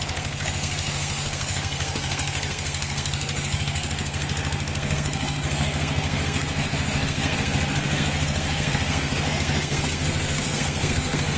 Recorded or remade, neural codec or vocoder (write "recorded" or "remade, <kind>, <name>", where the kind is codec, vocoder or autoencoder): remade, codec, SNAC